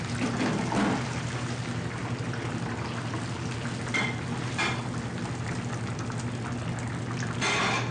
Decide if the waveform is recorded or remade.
recorded